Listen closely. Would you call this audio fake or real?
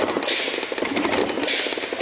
real